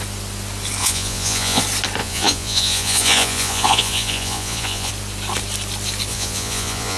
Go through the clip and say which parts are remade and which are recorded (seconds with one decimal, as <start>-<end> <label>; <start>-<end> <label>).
0.0-0.8 recorded; 0.8-1.6 remade; 1.6-2.0 recorded; 2.0-4.9 remade; 4.9-6.1 recorded; 6.1-7.0 remade